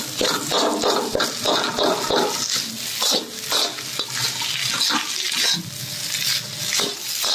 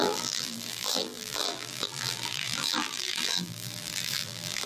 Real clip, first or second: first